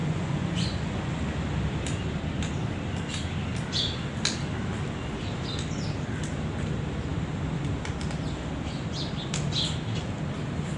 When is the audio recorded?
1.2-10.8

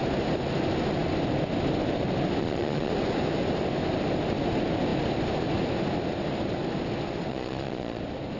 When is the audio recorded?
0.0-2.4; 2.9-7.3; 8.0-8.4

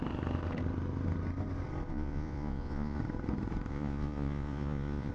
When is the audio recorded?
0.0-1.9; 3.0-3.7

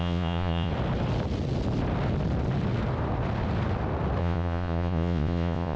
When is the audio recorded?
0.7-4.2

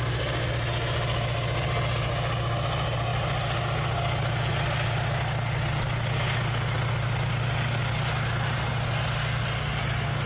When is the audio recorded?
0.0-10.3